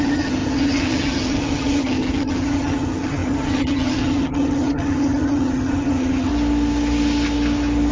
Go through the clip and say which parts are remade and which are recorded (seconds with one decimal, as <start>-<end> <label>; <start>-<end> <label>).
0.0-6.3 remade; 6.3-7.9 recorded